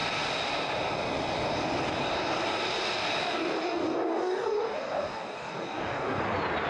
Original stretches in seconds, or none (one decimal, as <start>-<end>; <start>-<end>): 0.0-3.2; 6.2-6.7